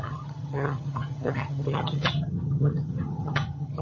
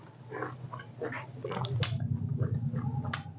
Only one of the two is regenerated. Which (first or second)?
first